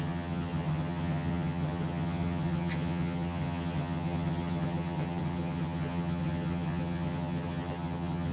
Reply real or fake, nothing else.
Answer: fake